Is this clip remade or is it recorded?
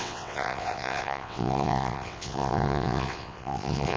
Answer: remade